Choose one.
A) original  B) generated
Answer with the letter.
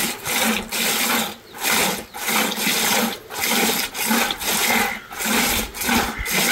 A